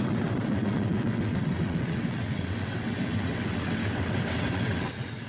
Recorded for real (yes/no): no